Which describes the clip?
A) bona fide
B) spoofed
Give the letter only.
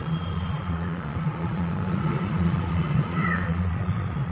B